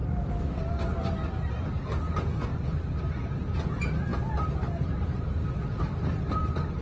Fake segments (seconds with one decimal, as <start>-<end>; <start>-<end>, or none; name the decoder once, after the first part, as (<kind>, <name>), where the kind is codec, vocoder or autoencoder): 0.0-0.6 (codec, SNAC)